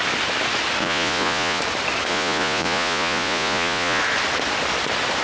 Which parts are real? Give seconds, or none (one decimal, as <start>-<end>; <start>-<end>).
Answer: 0.0-0.8; 1.6-2.1; 4.0-5.2